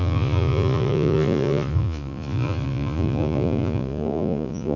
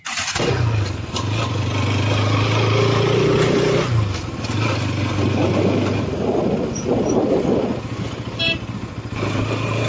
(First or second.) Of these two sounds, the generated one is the first